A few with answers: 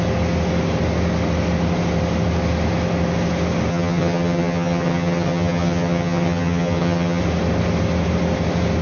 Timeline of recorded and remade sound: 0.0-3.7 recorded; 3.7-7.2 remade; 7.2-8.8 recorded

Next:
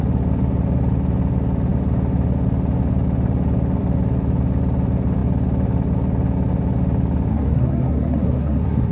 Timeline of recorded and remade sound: 0.0-7.3 recorded; 7.3-8.9 remade

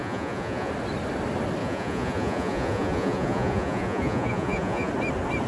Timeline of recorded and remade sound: 0.0-0.7 remade; 0.7-1.6 recorded; 1.6-4.9 remade; 4.9-5.5 recorded

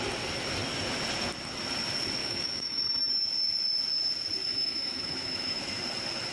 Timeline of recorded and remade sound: 0.0-2.2 recorded; 2.2-3.1 remade; 3.1-4.4 recorded; 4.4-5.8 remade; 5.8-6.3 recorded

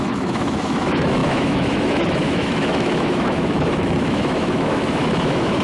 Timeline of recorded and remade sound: 0.0-5.6 remade

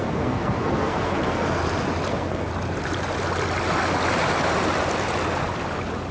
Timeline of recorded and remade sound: 0.0-1.6 remade; 1.6-2.1 recorded; 2.1-2.5 remade; 2.5-6.1 recorded